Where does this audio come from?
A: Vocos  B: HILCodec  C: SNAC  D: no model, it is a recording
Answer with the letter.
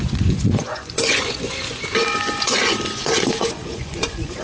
A